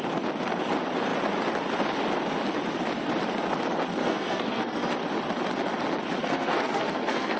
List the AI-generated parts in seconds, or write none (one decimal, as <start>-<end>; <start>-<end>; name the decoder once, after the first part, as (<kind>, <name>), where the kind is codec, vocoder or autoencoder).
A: 4.0-4.9 (codec, SNAC); 6.2-7.4

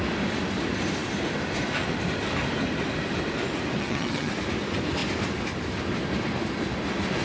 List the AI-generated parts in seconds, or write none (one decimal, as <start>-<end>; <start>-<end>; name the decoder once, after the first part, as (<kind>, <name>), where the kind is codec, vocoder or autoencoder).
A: 3.8-4.3 (vocoder, HiFi-GAN)

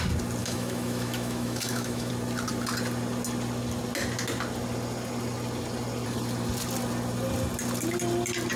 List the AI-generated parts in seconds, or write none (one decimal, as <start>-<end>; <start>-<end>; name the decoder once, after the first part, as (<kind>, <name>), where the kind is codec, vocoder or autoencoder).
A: 0.4-2.1 (autoencoder, DAC-VAE)

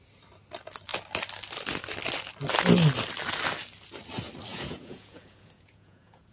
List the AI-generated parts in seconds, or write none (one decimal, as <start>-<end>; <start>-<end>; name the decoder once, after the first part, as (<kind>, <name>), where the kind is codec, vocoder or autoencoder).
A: 4.5-6.3 (vocoder, Vocos)

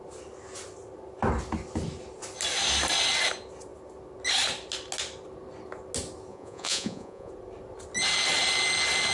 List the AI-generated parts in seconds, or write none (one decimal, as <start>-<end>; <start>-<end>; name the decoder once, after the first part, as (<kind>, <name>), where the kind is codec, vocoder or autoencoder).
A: 6.3-7.3 (vocoder, Vocos)

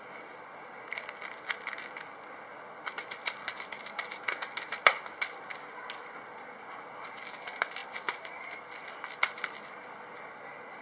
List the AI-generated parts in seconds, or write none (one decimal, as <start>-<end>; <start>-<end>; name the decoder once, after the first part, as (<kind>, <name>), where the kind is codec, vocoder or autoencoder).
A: none

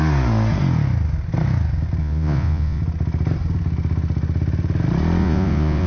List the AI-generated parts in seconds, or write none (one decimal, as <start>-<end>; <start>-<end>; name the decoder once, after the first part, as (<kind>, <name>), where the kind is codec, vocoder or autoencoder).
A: 2.0-2.8 (vocoder, Vocos); 5.2-5.9